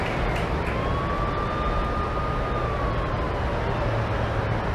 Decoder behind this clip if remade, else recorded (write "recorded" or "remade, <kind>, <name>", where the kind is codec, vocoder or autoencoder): recorded